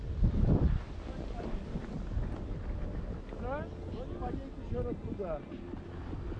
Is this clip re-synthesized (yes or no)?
no